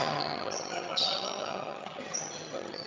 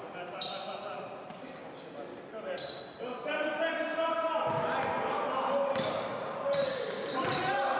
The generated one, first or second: first